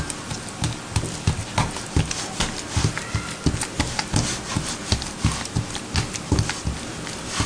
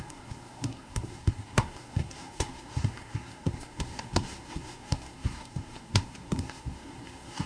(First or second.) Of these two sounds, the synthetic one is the second